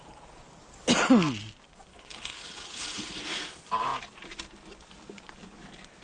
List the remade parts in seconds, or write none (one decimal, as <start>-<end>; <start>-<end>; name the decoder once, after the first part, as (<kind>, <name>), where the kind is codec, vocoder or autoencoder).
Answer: 1.9-3.2 (codec, HILCodec)